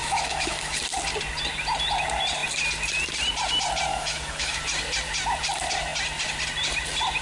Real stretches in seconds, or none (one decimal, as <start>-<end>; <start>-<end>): 0.8-3.9; 4.6-7.2